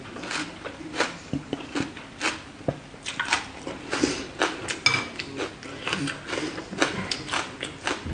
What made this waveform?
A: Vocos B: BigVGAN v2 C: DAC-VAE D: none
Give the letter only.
D